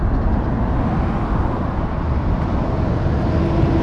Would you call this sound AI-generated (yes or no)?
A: no